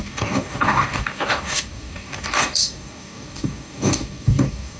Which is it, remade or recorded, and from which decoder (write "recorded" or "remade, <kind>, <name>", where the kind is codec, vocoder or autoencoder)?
remade, codec, DAC